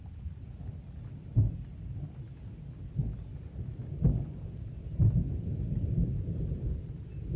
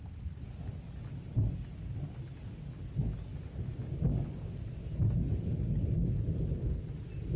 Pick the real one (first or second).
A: second